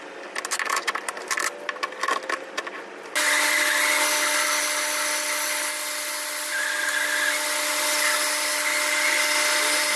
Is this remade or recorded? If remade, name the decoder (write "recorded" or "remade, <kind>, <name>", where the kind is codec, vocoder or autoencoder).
recorded